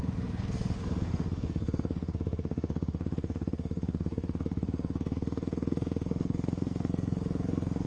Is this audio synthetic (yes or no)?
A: yes